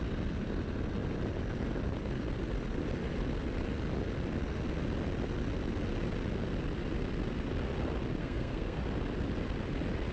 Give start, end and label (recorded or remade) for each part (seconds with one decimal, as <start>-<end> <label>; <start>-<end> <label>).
0.0-8.2 recorded; 8.2-8.8 remade; 8.8-10.1 recorded